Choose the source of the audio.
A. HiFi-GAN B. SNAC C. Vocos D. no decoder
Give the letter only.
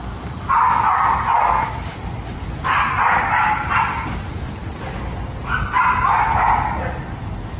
D